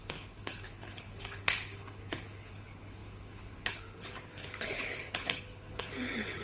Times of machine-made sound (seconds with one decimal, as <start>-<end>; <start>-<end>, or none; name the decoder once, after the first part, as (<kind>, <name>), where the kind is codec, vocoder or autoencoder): 0.0-6.4 (codec, HILCodec)